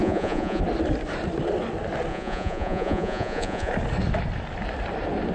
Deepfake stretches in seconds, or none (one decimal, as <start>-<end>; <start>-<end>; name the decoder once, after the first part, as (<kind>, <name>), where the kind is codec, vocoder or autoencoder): 0.0-0.6 (vocoder, Vocos); 2.1-3.7